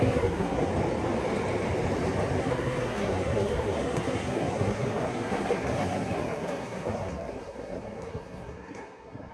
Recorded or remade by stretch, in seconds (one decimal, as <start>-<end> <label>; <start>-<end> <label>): 0.0-0.7 remade; 0.7-2.4 recorded; 2.4-9.3 remade

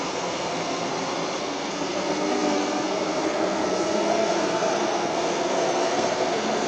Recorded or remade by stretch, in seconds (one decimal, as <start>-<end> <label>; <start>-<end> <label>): 0.0-0.9 remade; 0.9-1.4 recorded; 1.4-6.7 remade

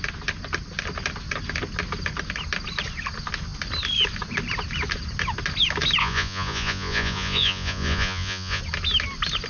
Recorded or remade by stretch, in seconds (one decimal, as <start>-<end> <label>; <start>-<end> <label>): 0.0-6.0 recorded; 6.0-8.6 remade; 8.6-9.5 recorded

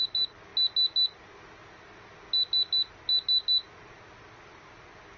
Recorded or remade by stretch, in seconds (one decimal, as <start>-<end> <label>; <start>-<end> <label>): 0.0-5.2 recorded

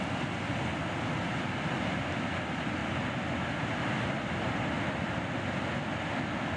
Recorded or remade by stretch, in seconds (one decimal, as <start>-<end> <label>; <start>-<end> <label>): 0.0-6.6 recorded

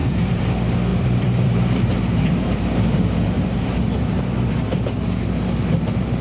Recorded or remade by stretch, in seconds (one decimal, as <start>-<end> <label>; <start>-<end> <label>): 0.0-0.5 remade; 0.5-0.9 recorded; 0.9-4.2 remade; 4.2-6.2 recorded

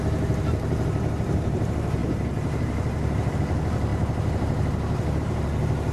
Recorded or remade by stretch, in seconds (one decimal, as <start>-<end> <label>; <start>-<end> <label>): 0.0-3.9 remade; 3.9-5.2 recorded; 5.2-5.9 remade